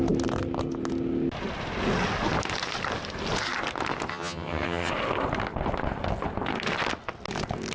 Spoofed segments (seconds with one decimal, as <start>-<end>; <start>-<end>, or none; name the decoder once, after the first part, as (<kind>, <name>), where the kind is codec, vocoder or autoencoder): 4.1-4.9 (vocoder, HiFi-GAN)